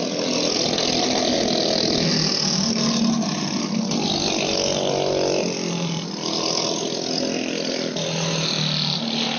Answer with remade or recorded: recorded